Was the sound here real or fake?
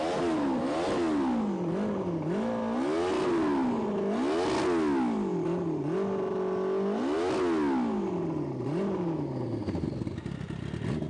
real